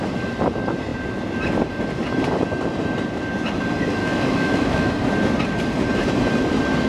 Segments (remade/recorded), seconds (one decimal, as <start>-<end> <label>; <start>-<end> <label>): 0.0-4.0 recorded; 4.0-4.9 remade; 4.9-6.9 recorded